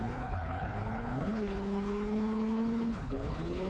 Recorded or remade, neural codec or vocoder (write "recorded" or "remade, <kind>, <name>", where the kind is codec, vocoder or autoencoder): remade, codec, HILCodec